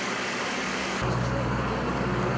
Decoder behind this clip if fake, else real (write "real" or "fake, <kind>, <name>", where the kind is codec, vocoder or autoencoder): fake, codec, DAC